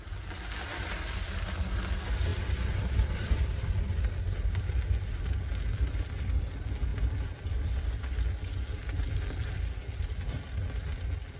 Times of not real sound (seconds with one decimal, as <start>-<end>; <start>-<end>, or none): 2.3-3.4; 6.9-7.9